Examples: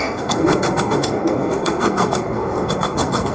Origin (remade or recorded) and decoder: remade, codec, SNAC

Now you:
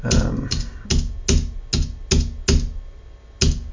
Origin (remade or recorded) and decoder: recorded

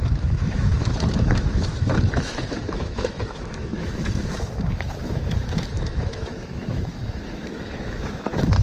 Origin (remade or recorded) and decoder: remade, autoencoder, DAC-VAE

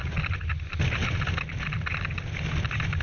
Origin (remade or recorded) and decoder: recorded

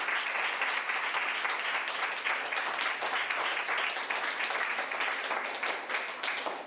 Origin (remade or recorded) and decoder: recorded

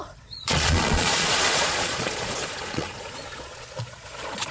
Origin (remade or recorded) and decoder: remade, vocoder, Vocos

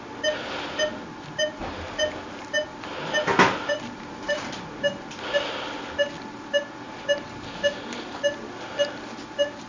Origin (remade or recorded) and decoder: recorded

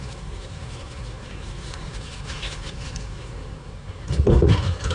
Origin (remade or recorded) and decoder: remade, codec, SNAC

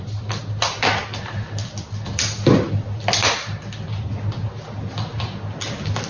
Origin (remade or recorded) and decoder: recorded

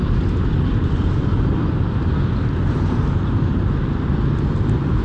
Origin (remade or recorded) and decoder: recorded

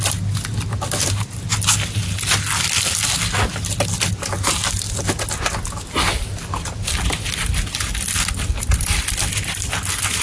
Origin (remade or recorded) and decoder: recorded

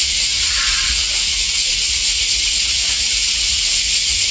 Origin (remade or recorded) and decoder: remade, vocoder, Vocos